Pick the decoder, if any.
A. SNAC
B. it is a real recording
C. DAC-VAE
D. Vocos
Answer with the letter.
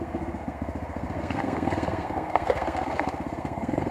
A